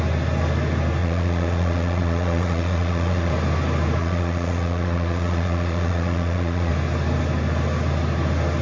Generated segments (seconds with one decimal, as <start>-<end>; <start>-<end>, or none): 1.0-3.3; 4.0-6.7